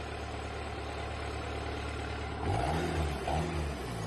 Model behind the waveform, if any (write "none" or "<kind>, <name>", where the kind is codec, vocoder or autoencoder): none